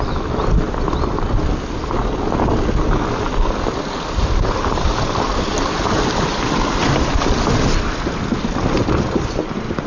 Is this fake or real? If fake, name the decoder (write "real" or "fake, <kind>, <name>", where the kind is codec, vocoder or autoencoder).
real